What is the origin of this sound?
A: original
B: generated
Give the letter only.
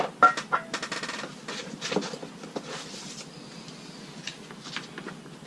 A